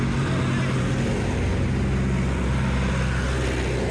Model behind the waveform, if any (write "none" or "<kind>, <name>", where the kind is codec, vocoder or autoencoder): none